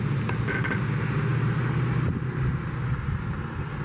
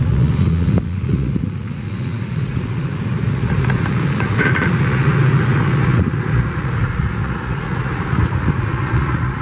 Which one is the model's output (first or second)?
second